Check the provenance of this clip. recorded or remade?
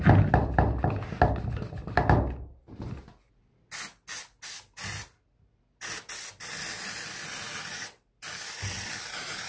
recorded